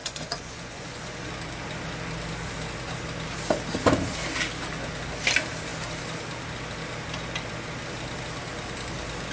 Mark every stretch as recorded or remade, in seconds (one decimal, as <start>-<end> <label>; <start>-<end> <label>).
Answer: 0.0-1.3 remade; 1.3-9.3 recorded